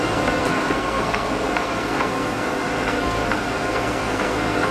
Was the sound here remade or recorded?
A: remade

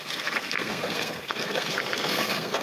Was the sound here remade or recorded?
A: remade